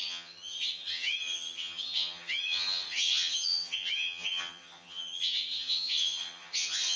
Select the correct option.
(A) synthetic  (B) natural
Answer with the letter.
A